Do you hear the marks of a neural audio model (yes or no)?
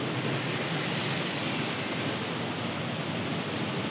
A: no